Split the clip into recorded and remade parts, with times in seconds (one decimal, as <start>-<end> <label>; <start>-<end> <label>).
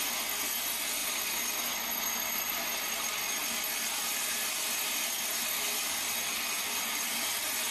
0.0-7.7 recorded